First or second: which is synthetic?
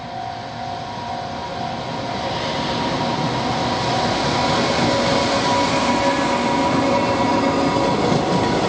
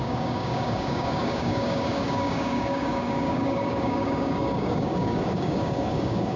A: second